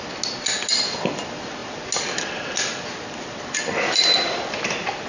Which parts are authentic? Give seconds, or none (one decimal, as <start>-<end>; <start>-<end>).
0.0-5.1